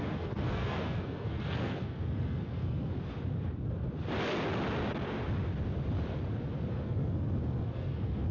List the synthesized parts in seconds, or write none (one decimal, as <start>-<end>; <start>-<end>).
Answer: 0.0-2.9; 6.7-8.3